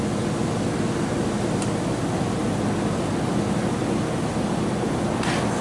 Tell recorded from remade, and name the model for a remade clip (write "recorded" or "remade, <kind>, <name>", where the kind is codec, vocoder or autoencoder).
recorded